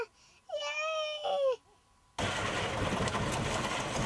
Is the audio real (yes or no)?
yes